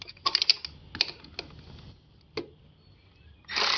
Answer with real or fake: real